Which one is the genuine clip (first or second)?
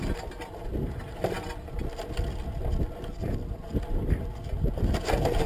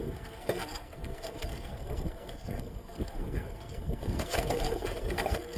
first